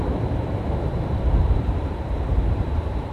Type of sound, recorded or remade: remade